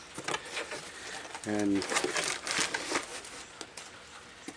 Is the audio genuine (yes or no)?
yes